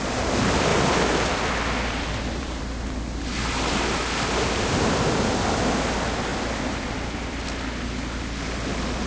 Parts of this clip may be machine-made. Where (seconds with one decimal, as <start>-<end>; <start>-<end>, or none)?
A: 0.7-2.6; 6.3-7.4